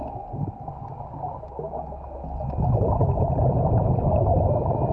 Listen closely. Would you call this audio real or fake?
real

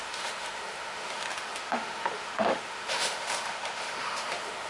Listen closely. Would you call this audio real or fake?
fake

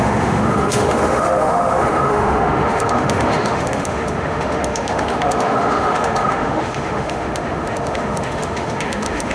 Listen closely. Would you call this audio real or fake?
fake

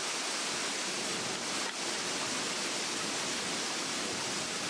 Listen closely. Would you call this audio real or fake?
real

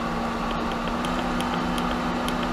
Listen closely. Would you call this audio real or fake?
real